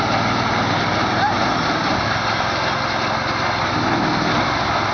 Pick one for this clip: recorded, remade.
recorded